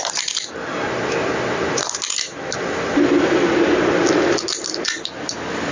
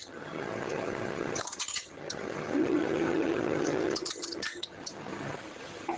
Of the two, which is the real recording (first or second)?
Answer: first